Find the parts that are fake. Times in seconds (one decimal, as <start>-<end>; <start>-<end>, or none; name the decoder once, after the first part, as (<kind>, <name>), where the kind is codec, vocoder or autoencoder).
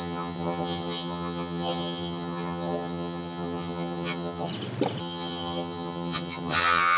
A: 0.0-4.5 (vocoder, HiFi-GAN); 5.0-7.0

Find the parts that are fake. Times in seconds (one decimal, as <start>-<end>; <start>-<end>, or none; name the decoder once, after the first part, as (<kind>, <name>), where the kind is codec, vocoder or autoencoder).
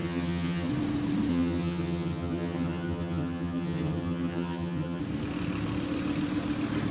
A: 0.0-0.7 (vocoder, HiFi-GAN); 1.3-5.0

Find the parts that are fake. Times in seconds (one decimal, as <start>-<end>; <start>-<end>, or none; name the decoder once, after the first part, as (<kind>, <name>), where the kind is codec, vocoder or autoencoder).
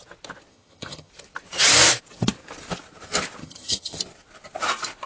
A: 0.5-1.1 (vocoder, HiFi-GAN); 3.4-4.0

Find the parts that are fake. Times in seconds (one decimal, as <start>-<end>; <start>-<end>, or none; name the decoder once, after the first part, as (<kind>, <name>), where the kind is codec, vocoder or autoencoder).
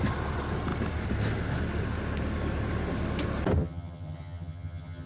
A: 3.6-5.1 (vocoder, HiFi-GAN)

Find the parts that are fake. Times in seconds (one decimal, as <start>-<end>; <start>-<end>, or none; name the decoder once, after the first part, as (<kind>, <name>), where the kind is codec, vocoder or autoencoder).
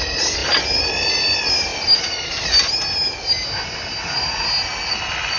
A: none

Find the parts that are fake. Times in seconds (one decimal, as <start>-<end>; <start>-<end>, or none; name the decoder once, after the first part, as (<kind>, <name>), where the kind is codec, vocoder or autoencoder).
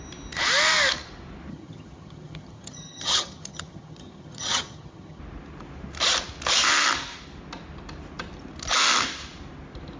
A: 1.5-5.2 (vocoder, HiFi-GAN)